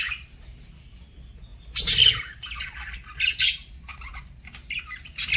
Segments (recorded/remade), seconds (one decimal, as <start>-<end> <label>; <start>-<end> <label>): 0.0-5.4 recorded